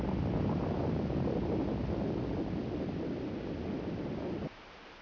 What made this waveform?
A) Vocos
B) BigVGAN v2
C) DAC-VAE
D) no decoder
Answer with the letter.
D